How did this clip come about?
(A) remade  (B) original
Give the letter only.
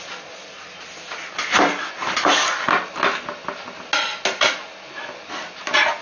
B